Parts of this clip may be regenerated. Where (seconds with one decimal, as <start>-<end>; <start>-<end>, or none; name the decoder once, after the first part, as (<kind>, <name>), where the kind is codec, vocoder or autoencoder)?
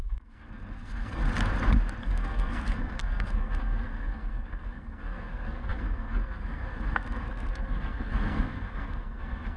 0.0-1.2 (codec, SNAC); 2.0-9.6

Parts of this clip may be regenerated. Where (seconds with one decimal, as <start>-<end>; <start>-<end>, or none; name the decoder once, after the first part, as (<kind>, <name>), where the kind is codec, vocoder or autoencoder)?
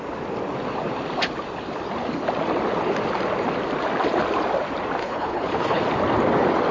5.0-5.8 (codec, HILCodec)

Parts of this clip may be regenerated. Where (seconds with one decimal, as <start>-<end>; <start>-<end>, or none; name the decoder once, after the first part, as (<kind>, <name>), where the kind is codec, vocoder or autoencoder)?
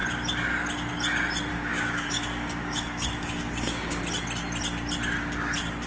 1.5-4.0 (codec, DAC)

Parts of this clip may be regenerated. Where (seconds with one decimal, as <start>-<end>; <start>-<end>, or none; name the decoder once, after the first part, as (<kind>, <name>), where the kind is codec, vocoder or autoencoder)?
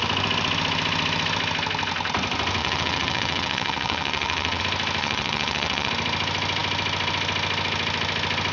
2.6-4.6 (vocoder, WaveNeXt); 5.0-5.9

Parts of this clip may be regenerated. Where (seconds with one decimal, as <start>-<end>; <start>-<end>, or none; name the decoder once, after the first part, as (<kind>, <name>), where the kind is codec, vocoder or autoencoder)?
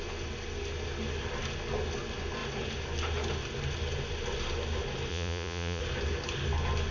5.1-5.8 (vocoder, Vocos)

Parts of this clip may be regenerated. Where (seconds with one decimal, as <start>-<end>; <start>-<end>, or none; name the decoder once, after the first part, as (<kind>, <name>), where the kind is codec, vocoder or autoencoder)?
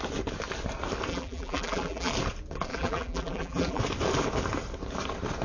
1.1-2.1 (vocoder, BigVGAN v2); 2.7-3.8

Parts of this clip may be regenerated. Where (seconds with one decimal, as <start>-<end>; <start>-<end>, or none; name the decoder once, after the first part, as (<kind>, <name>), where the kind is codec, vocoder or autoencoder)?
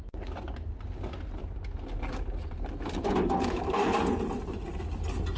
none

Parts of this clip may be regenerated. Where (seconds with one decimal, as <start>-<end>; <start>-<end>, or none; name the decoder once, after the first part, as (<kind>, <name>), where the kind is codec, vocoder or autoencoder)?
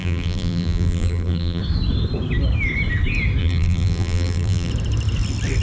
0.0-1.6 (vocoder, BigVGAN v2); 3.4-4.7